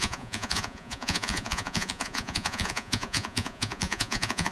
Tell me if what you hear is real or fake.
fake